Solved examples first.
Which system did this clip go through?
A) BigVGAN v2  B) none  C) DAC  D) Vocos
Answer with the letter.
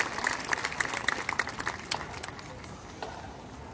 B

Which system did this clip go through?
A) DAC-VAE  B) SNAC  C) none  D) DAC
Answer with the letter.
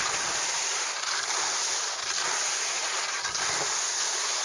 C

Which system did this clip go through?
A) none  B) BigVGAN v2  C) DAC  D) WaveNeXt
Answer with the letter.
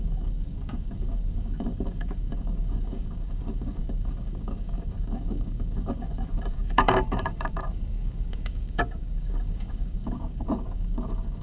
C